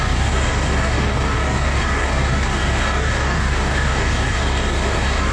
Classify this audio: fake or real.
fake